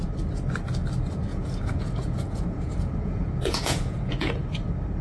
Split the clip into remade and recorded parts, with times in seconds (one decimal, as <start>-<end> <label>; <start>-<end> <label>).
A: 0.0-1.3 recorded; 1.3-4.3 remade; 4.3-5.0 recorded